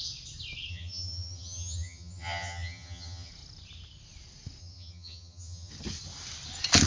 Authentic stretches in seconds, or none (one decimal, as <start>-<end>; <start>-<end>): 0.0-0.7; 3.3-4.6; 5.7-6.9